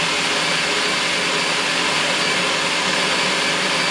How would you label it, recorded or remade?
recorded